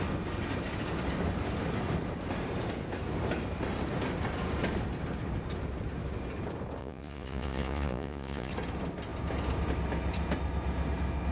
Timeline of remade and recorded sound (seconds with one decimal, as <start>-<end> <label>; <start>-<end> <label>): 0.0-6.8 recorded; 6.8-8.5 remade; 8.5-11.3 recorded